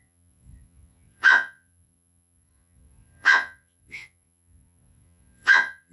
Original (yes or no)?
no